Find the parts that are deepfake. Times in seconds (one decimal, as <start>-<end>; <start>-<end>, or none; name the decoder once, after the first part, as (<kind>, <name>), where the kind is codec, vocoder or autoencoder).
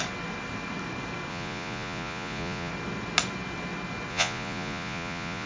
1.3-2.7 (vocoder, Vocos); 4.1-5.5